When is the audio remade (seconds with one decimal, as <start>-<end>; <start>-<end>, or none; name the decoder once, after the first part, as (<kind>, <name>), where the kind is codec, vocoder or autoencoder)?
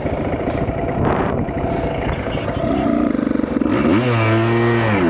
0.0-1.9 (vocoder, BigVGAN v2)